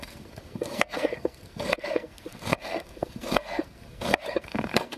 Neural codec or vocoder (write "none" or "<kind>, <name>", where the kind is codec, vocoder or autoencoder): codec, SNAC